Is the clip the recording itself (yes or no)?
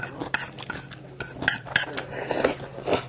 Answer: yes